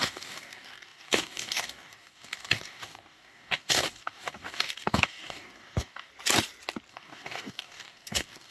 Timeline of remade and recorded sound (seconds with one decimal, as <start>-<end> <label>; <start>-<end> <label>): 0.0-6.1 remade; 6.1-6.9 recorded; 6.9-8.5 remade